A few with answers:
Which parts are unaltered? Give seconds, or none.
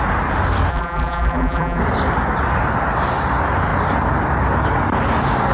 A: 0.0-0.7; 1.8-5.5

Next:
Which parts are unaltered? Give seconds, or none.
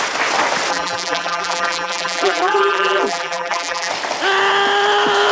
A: 0.0-0.7; 3.9-5.3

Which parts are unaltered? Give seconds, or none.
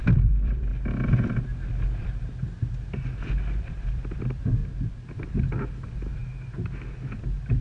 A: 0.7-3.6; 4.6-5.1; 6.2-7.6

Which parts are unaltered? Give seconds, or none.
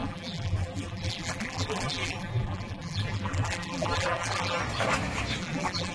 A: 4.6-5.4